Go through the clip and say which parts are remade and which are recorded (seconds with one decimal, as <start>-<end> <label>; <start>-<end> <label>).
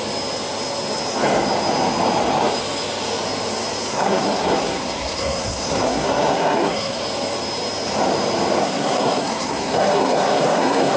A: 0.0-3.9 recorded; 3.9-7.0 remade; 7.0-8.6 recorded; 8.6-11.0 remade